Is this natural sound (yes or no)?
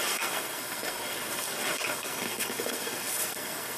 no